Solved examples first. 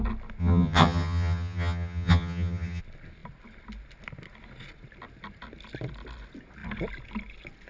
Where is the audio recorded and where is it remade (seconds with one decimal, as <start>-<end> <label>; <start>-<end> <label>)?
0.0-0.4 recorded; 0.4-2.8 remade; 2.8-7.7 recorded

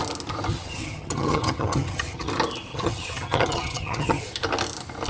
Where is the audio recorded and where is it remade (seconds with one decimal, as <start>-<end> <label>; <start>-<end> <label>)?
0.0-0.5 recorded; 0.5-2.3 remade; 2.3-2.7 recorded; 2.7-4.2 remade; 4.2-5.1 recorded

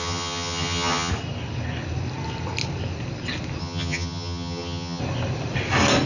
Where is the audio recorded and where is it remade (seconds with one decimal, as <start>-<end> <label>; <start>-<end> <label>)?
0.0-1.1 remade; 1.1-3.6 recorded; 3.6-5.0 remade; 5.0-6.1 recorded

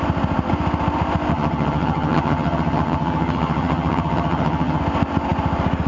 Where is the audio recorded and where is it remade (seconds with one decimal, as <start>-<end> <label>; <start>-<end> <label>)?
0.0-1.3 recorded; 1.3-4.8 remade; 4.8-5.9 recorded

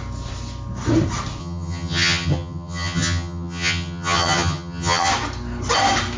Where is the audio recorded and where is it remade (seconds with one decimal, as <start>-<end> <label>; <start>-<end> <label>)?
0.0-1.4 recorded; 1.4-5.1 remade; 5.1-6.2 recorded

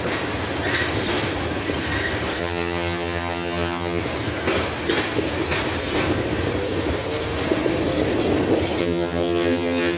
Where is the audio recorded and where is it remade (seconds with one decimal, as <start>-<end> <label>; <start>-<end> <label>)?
0.0-2.4 recorded; 2.4-4.0 remade; 4.0-8.8 recorded; 8.8-10.0 remade

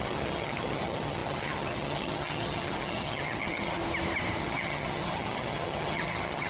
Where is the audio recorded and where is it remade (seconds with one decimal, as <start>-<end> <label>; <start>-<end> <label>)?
0.0-3.8 remade; 3.8-4.4 recorded; 4.4-6.5 remade

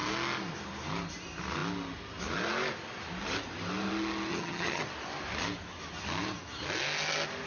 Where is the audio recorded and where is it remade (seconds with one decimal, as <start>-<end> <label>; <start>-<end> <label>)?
0.0-4.3 recorded; 4.3-4.8 remade; 4.8-7.5 recorded